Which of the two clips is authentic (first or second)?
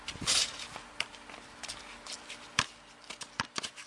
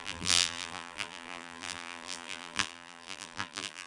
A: first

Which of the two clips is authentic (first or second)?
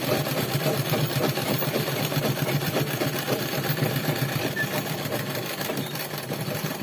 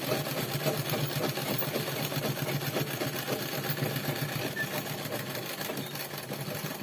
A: second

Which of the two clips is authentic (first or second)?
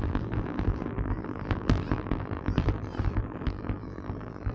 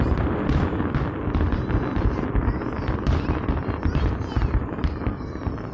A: second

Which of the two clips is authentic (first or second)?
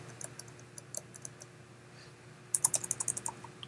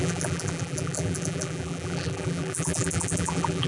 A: first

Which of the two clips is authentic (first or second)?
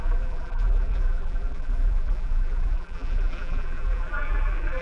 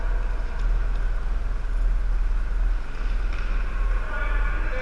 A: second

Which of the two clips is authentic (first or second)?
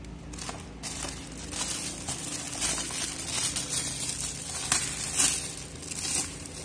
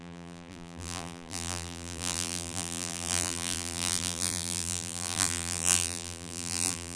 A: first